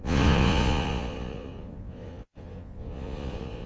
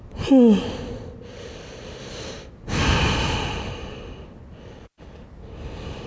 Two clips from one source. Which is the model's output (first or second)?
first